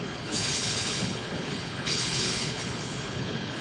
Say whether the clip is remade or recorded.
remade